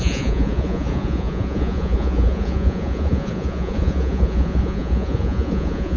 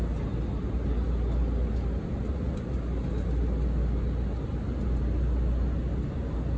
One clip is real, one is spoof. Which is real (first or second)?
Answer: second